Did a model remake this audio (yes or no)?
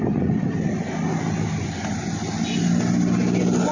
no